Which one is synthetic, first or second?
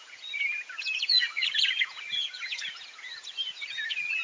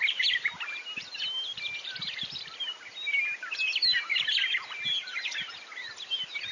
first